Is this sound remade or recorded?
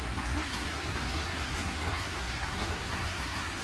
remade